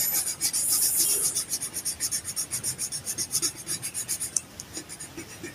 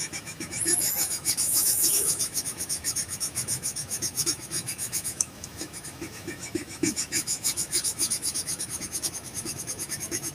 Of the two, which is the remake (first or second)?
second